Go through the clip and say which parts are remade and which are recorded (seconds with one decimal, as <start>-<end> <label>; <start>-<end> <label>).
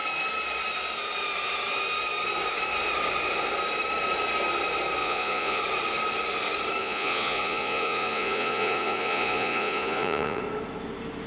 0.0-5.0 recorded; 5.0-5.6 remade; 5.6-6.8 recorded; 6.8-10.4 remade; 10.4-11.3 recorded